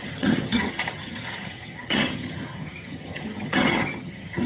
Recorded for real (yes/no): no